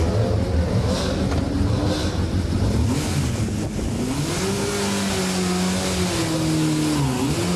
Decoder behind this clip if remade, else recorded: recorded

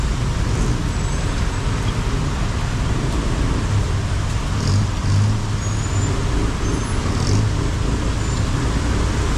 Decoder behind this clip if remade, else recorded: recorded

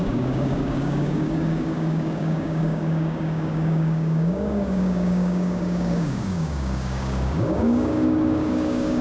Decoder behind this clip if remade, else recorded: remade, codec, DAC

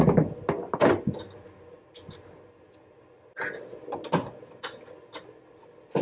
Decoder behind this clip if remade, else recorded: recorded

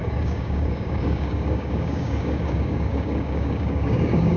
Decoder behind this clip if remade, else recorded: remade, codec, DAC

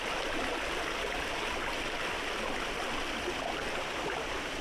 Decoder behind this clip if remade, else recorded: recorded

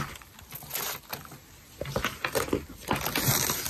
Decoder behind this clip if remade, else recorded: recorded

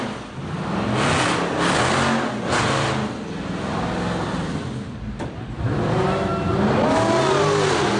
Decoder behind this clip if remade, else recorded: recorded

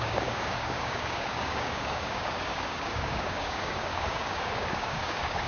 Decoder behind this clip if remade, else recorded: remade, codec, DAC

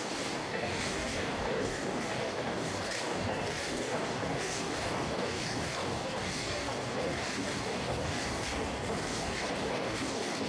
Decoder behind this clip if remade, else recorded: remade, codec, DAC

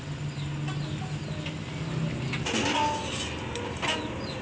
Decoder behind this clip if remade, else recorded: recorded